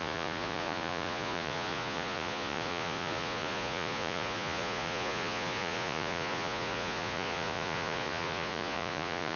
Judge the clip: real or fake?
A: fake